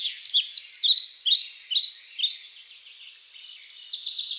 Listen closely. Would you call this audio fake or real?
real